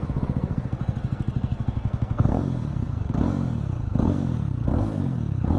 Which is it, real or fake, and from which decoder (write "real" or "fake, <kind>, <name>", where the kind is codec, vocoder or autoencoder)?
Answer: fake, codec, SNAC